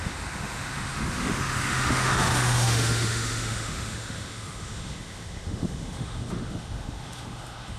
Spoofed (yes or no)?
yes